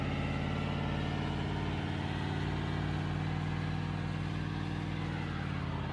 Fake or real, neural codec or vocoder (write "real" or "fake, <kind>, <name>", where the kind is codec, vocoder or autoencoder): real